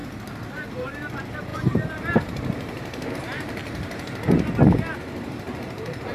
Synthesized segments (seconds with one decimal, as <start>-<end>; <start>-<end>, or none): 0.5-3.6; 5.0-6.1